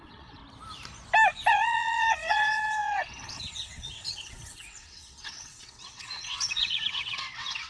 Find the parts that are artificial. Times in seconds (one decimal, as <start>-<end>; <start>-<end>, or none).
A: 0.0-0.4; 1.5-7.7